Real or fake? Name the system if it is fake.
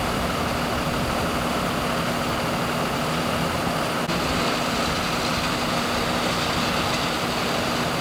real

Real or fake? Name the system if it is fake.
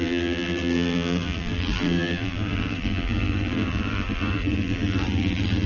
fake, vocoder, BigVGAN v2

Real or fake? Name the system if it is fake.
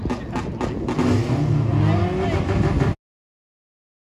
real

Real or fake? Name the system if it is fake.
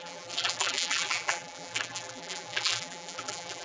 fake, vocoder, BigVGAN v2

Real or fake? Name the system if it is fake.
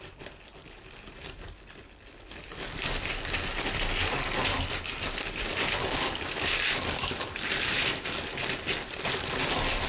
real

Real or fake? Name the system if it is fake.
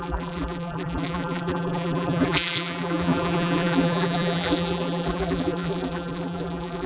fake, vocoder, BigVGAN v2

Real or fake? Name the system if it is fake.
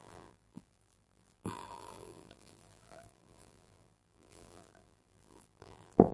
fake, vocoder, BigVGAN v2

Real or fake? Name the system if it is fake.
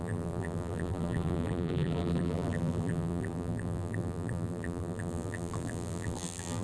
fake, vocoder, BigVGAN v2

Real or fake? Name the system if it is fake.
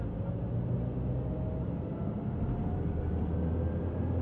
real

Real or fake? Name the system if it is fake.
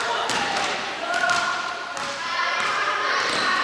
fake, vocoder, BigVGAN v2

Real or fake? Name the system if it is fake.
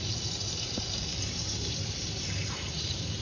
fake, vocoder, BigVGAN v2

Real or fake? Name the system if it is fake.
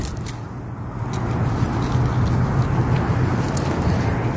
real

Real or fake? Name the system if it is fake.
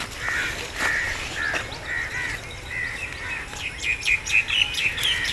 real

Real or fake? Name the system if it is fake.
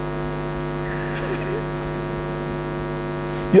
real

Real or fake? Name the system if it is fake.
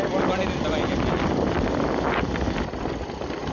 real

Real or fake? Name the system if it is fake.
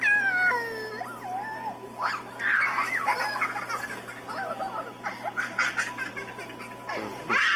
real